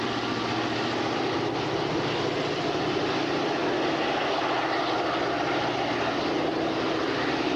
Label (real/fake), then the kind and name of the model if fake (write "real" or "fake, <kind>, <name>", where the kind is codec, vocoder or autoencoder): real